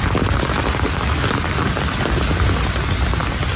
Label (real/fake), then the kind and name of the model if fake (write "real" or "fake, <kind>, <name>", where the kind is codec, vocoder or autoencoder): real